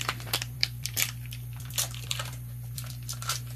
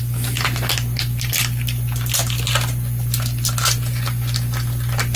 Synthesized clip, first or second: first